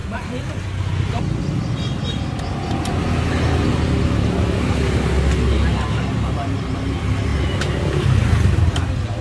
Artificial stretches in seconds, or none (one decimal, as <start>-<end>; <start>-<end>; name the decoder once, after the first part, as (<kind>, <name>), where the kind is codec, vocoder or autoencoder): none